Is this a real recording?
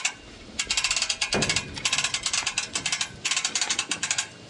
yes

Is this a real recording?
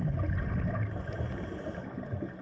yes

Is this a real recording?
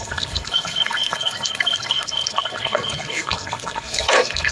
no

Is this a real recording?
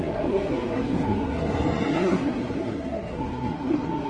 no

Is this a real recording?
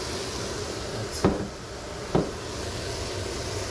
yes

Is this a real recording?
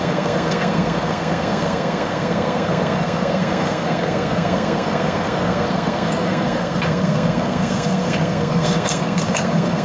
no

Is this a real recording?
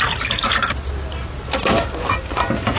yes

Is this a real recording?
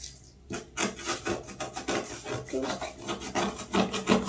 yes